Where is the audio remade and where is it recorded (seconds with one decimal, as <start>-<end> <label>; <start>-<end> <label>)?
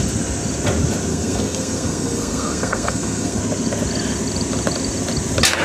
0.0-1.1 recorded; 1.1-3.4 remade; 3.4-5.6 recorded